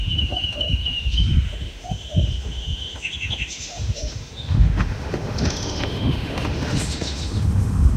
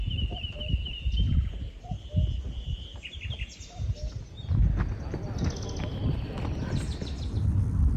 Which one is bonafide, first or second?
second